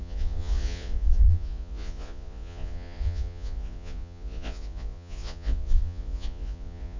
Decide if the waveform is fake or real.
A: fake